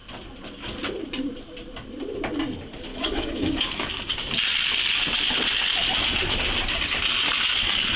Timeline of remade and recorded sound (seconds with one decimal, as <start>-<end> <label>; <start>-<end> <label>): 0.0-2.9 recorded; 2.9-3.9 remade; 3.9-8.0 recorded